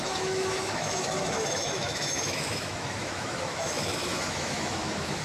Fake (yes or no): yes